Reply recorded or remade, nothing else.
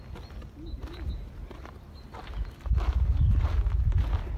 recorded